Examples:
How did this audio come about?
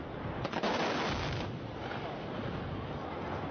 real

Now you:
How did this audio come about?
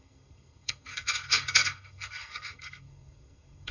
fake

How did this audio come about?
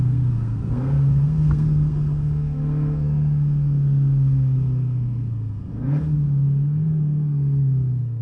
fake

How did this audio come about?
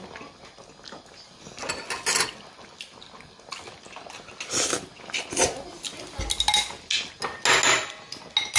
real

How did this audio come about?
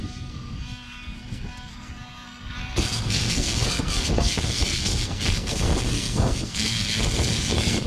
fake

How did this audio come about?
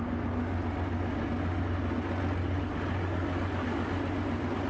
real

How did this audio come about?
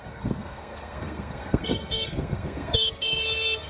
fake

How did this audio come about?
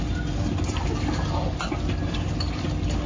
real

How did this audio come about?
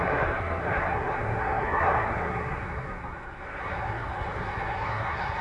fake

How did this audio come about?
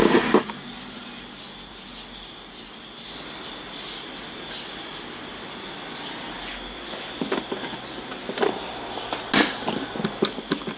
real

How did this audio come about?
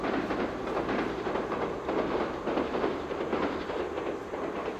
real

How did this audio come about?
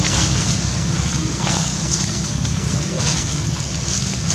fake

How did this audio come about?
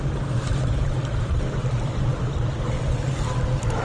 real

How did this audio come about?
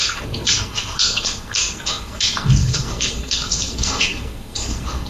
fake